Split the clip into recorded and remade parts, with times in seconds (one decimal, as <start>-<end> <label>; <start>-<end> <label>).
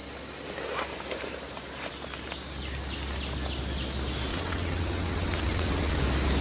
0.0-4.3 recorded; 4.3-6.0 remade; 6.0-6.4 recorded